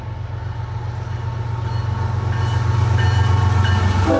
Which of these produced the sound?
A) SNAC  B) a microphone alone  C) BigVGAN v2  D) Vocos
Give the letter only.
B